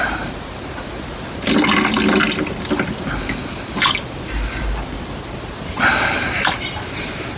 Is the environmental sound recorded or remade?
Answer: recorded